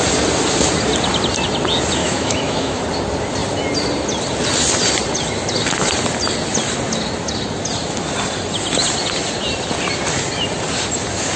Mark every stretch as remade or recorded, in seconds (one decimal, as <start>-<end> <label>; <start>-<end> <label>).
0.0-2.0 recorded; 2.0-2.8 remade; 2.8-11.4 recorded